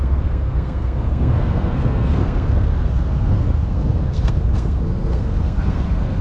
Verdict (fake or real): fake